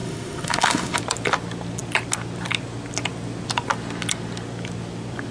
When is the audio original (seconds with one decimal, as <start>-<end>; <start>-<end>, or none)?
1.0-5.3